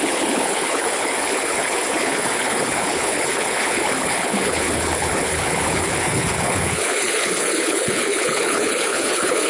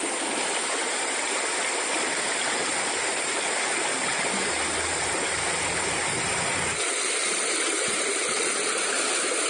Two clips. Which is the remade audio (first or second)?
first